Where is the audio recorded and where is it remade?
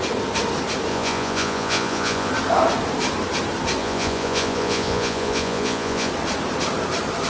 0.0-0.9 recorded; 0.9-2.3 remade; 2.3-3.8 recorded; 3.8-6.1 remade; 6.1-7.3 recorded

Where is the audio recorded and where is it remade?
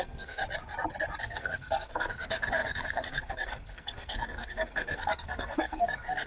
0.0-0.4 remade; 0.4-1.2 recorded; 1.2-6.3 remade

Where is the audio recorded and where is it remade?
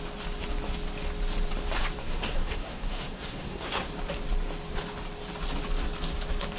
0.0-2.0 recorded; 2.0-3.9 remade; 3.9-6.6 recorded